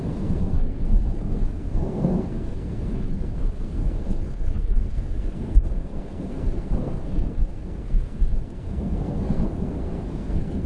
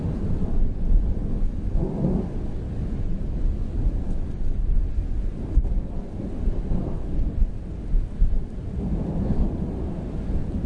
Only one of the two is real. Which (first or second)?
second